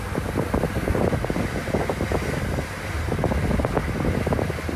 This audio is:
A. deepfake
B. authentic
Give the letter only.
B